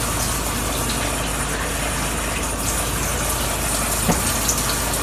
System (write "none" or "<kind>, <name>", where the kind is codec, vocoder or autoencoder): none